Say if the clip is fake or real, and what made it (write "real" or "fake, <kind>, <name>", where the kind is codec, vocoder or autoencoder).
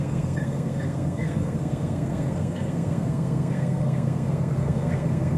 fake, codec, SNAC